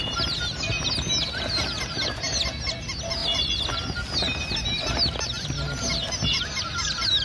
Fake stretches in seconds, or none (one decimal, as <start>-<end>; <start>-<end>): none